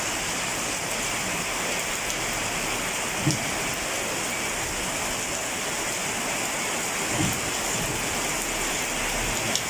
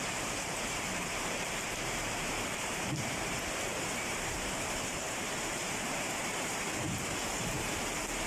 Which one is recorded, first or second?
first